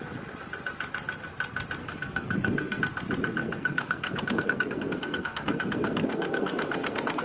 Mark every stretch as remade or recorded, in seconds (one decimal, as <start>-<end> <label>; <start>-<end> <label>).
0.0-1.8 recorded; 1.8-2.8 remade; 2.8-3.4 recorded; 3.4-7.2 remade